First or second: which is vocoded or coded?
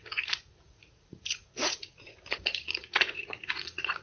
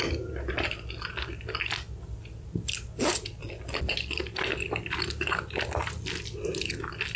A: first